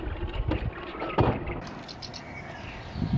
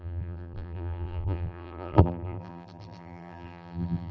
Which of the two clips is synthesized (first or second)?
second